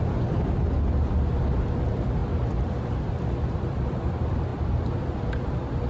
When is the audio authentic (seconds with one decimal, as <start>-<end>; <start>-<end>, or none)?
4.5-5.0